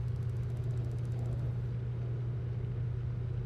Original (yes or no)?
yes